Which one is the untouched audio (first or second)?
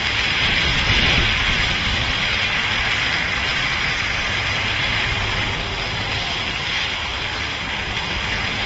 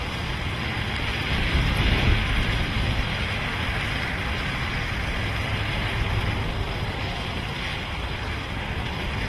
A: first